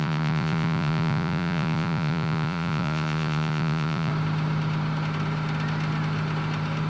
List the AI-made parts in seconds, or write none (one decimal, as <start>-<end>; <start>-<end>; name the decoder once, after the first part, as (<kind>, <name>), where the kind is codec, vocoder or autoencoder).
0.0-4.1 (vocoder, Vocos)